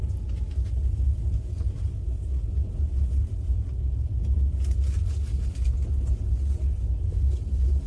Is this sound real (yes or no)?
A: yes